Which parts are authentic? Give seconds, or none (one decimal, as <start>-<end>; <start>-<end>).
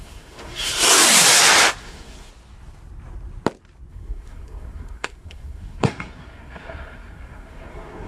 0.7-1.8; 2.3-3.9